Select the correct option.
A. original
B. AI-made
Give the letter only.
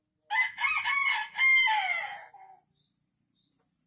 A